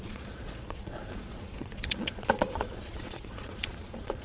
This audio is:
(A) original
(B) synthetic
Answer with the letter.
B